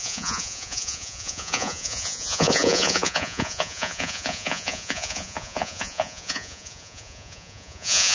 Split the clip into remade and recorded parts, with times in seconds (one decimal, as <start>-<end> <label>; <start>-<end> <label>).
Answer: 0.0-8.1 remade